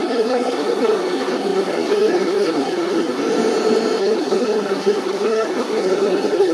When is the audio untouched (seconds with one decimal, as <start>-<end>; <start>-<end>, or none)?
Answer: 3.2-4.0